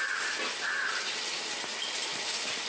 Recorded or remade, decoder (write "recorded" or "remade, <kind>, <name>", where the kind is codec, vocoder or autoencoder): recorded